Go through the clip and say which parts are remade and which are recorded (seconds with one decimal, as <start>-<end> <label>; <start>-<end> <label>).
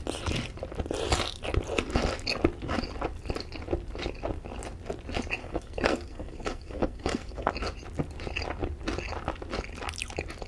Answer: 0.0-5.4 recorded; 5.4-7.5 remade; 7.5-10.5 recorded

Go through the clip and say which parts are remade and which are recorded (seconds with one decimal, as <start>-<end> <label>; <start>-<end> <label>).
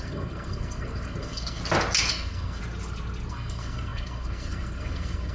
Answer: 0.0-1.6 remade; 1.6-2.1 recorded; 2.1-2.6 remade; 2.6-3.3 recorded; 3.3-5.3 remade